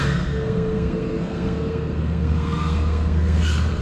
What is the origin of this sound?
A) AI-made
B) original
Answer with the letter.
A